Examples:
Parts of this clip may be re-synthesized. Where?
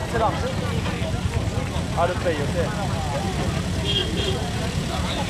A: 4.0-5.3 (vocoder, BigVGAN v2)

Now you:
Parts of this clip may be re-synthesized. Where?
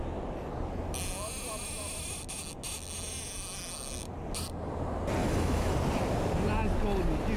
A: 5.2-5.7 (autoencoder, DAC-VAE)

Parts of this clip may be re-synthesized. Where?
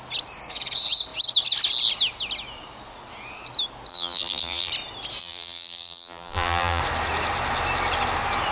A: 3.9-4.7 (vocoder, BigVGAN v2); 5.2-6.8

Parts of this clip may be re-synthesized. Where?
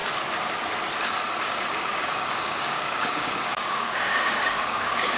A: 1.4-5.2 (codec, DAC)